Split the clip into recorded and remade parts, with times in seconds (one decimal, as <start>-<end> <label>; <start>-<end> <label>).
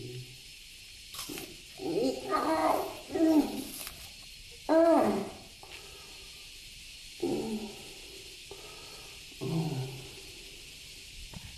0.0-0.5 recorded; 0.5-1.0 remade; 1.0-5.2 recorded; 5.2-5.7 remade; 5.7-11.6 recorded